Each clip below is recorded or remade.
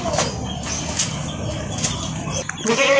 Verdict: recorded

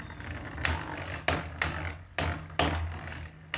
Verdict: recorded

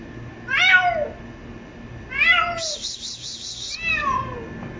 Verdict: recorded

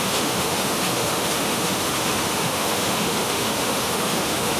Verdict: remade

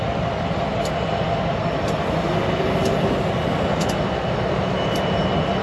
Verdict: recorded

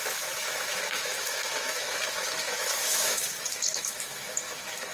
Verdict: remade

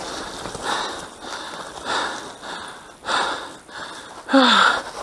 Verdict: recorded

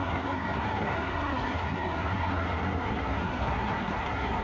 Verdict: remade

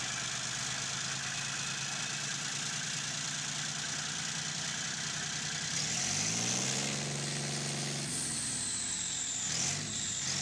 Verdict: recorded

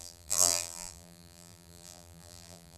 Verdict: remade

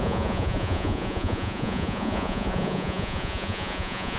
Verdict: remade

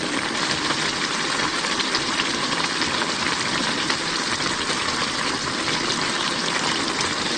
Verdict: remade